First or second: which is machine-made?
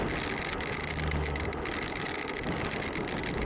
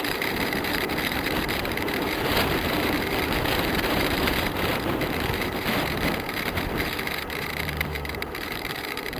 second